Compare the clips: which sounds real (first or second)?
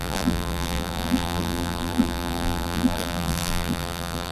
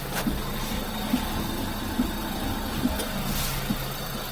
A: second